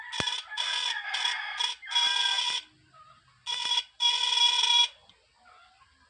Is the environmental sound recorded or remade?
recorded